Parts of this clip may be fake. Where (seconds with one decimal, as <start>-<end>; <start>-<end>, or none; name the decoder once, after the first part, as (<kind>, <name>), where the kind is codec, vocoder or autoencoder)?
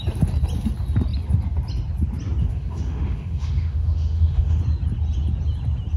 2.4-4.6 (autoencoder, DAC-VAE)